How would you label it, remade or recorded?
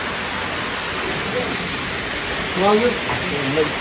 recorded